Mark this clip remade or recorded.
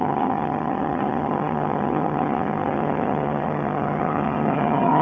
remade